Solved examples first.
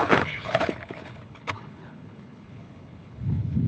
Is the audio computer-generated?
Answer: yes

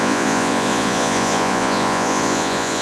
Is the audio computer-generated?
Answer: yes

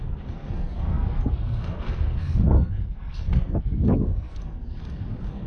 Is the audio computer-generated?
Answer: yes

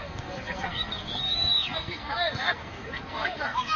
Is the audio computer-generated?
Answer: yes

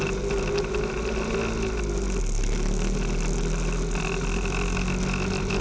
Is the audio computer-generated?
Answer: no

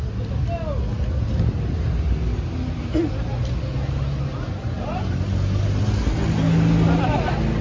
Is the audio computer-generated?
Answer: no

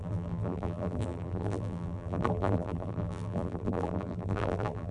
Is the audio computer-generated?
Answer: yes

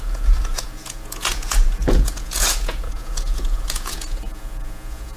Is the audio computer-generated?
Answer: yes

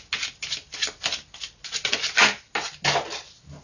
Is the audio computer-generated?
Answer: no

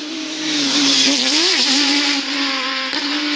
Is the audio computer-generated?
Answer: yes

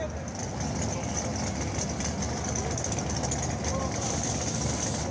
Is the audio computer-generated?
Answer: no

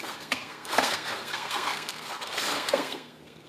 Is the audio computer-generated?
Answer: yes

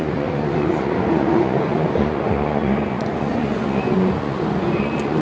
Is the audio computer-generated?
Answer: yes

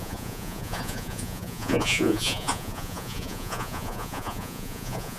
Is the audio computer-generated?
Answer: yes